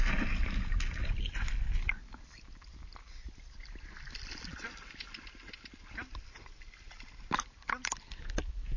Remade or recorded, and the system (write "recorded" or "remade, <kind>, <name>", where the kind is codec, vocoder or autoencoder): recorded